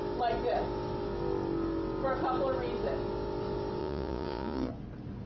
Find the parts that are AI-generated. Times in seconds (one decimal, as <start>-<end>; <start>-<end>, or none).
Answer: 3.8-4.7